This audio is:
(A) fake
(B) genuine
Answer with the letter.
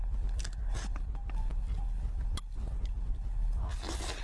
B